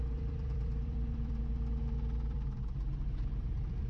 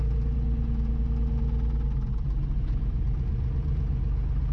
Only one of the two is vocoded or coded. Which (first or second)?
first